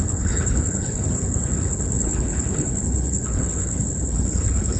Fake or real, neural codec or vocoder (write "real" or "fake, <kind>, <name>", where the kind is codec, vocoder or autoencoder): fake, codec, HILCodec